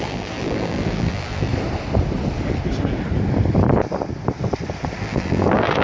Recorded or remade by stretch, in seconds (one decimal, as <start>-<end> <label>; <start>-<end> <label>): 0.0-1.5 remade; 1.5-5.0 recorded; 5.0-5.8 remade